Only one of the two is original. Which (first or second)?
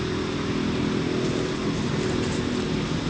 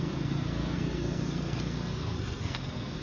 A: first